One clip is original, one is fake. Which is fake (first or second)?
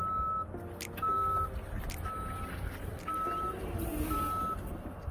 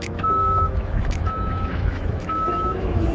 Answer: second